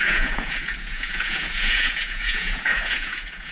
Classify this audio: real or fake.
fake